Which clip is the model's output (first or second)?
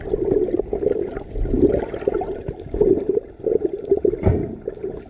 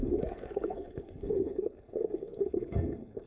second